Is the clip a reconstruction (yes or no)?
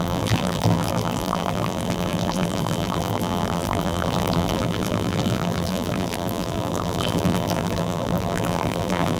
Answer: yes